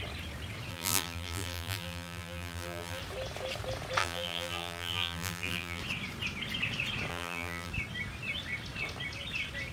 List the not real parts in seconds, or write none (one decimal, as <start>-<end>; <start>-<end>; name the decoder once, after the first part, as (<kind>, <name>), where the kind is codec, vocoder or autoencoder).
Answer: 0.7-3.0 (vocoder, BigVGAN v2); 4.0-5.8; 7.1-7.7